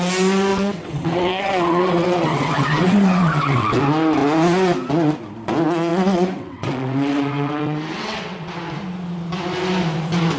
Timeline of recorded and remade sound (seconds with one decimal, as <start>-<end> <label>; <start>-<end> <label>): 0.0-0.5 recorded; 0.5-3.8 remade; 3.8-5.9 recorded; 5.9-8.5 remade; 8.5-10.4 recorded